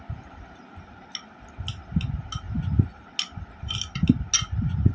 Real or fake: real